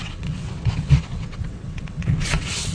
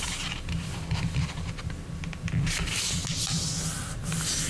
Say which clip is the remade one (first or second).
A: first